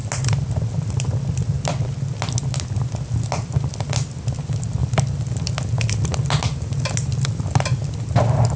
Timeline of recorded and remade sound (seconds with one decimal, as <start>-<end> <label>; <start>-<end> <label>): 0.0-8.6 recorded